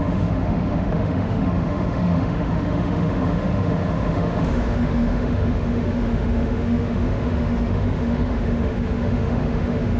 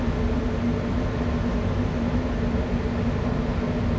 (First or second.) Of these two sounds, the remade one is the first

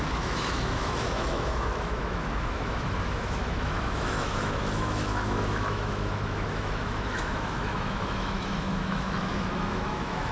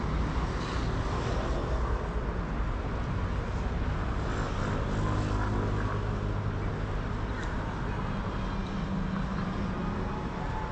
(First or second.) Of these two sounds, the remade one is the first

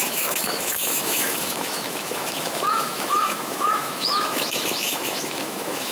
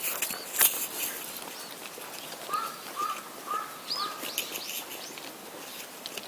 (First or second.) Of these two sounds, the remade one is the first